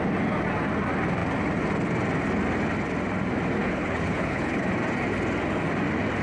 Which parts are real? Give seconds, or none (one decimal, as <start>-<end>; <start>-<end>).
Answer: 0.0-3.6; 4.6-6.2